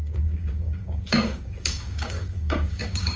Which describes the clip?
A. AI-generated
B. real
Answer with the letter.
A